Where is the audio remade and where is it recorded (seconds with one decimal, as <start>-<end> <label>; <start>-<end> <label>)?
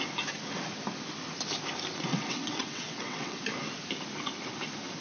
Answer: 0.0-2.1 recorded; 2.1-3.4 remade; 3.4-5.0 recorded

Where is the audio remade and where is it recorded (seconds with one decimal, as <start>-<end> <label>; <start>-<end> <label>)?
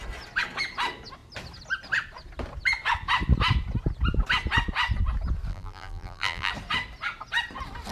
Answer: 0.0-5.5 recorded; 5.5-6.5 remade; 6.5-7.9 recorded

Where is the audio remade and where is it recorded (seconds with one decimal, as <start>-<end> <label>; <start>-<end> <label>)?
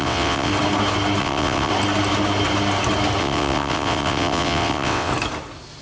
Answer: 0.0-0.5 remade; 0.5-1.2 recorded; 1.2-1.7 remade; 1.7-3.2 recorded; 3.2-5.1 remade; 5.1-5.8 recorded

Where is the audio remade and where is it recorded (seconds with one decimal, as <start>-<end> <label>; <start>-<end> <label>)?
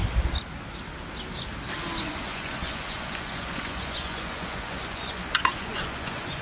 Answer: 0.0-2.0 recorded; 2.0-6.4 remade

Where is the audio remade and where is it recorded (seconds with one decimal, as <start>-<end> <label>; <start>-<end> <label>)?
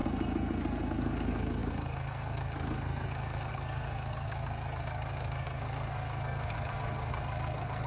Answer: 0.0-7.9 remade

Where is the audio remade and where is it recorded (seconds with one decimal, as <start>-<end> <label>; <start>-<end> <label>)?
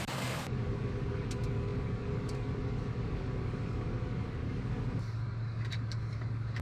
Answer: 0.0-6.6 remade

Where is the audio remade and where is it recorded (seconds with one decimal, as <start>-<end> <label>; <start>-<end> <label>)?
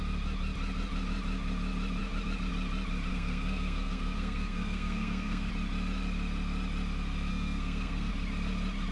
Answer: 0.0-3.1 recorded; 3.1-5.5 remade; 5.5-7.3 recorded; 7.3-8.1 remade; 8.1-8.9 recorded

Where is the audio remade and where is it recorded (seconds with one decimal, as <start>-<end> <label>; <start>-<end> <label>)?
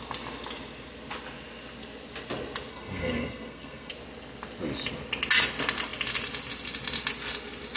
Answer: 0.0-2.7 recorded; 2.7-3.9 remade; 3.9-7.8 recorded